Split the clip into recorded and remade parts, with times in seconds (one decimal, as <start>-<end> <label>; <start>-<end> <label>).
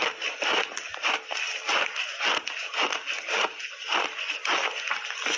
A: 0.0-5.4 recorded